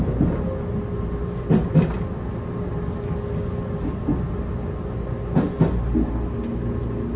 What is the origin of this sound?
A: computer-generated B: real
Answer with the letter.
B